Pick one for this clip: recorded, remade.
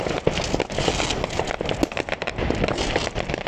recorded